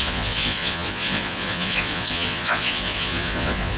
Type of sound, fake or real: fake